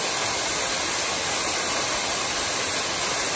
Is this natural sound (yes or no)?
yes